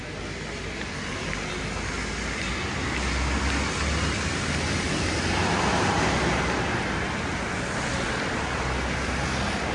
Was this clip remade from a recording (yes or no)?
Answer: no